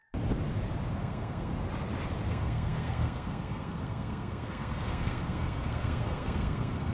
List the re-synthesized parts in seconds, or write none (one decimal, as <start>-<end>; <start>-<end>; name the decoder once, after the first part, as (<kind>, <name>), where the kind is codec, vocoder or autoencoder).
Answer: 1.0-1.5 (codec, SNAC); 2.3-6.9